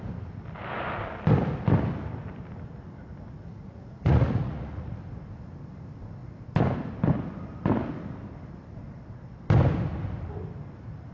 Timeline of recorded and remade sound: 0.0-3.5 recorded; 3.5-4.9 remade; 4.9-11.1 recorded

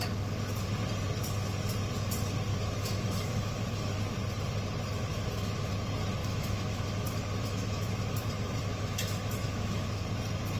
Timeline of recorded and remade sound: 0.0-2.5 recorded; 2.5-4.0 remade; 4.0-5.1 recorded; 5.1-5.7 remade; 5.7-6.2 recorded; 6.2-9.9 remade; 9.9-10.6 recorded

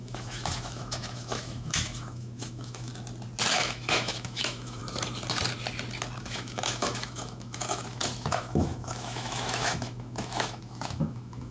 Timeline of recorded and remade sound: 0.0-2.9 remade; 2.9-3.5 recorded; 3.5-4.8 remade; 4.8-6.2 recorded; 6.2-11.5 remade

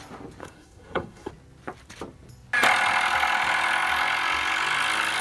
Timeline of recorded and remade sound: 0.0-0.4 recorded; 0.4-1.3 remade; 1.3-5.2 recorded

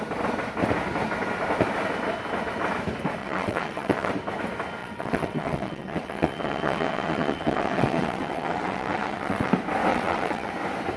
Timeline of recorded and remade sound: 0.0-3.2 recorded; 3.2-4.1 remade; 4.1-4.8 recorded; 4.8-9.5 remade; 9.5-9.9 recorded; 9.9-10.5 remade; 10.5-11.0 recorded